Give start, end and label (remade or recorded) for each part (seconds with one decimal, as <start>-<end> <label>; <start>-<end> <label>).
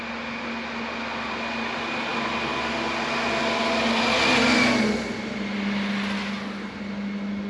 0.0-7.5 recorded